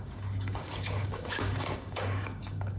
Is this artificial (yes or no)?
yes